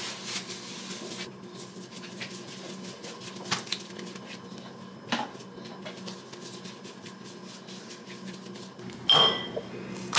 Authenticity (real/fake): real